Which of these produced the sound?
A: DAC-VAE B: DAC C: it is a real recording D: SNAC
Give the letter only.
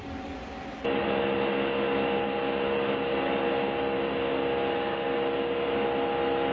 C